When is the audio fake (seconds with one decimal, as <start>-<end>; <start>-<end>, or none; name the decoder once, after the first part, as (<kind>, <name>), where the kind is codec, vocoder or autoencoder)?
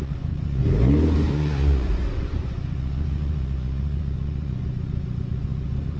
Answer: 0.0-0.6 (vocoder, Vocos); 1.3-6.0